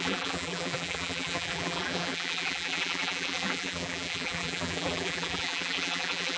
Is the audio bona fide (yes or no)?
no